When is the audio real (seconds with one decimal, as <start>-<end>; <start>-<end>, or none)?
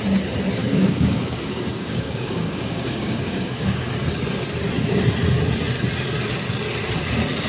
0.0-0.6; 3.9-7.5